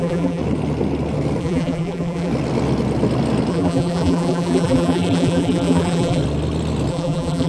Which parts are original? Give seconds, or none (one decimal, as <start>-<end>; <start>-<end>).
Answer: 0.4-1.4; 2.3-3.5; 6.2-6.9